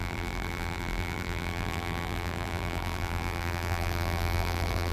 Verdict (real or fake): fake